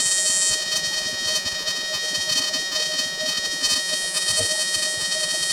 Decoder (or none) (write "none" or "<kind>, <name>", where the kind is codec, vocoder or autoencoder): vocoder, Vocos